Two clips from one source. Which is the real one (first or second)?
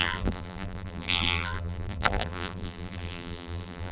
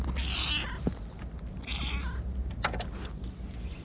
second